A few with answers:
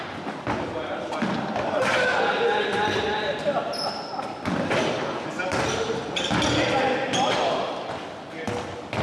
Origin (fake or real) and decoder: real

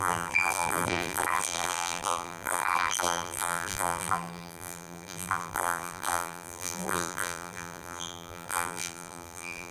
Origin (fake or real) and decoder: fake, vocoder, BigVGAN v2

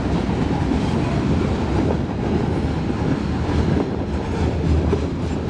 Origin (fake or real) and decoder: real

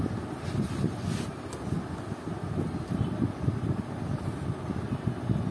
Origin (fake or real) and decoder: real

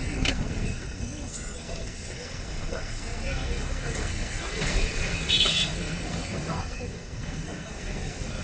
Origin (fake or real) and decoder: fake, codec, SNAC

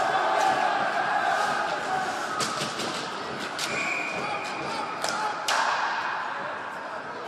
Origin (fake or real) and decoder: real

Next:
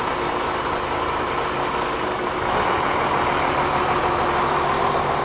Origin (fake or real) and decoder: real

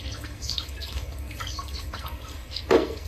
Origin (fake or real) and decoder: fake, codec, SNAC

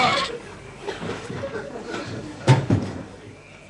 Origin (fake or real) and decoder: fake, codec, DAC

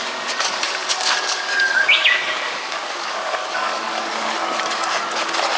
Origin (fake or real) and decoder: fake, codec, DAC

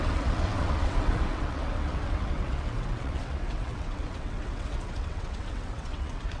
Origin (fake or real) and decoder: fake, vocoder, WaveNeXt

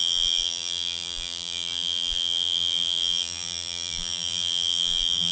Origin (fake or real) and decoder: fake, vocoder, BigVGAN v2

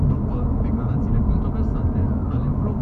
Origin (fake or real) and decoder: real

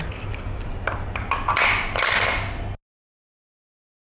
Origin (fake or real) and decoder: real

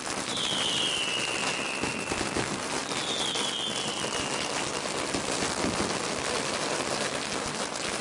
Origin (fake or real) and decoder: real